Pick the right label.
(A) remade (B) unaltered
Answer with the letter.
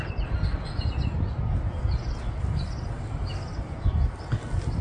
B